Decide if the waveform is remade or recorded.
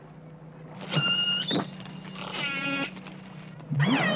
recorded